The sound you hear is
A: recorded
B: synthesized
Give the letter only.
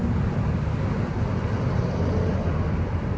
A